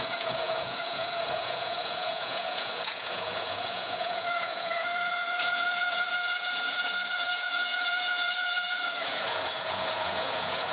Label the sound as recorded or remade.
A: remade